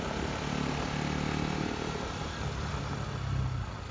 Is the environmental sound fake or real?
real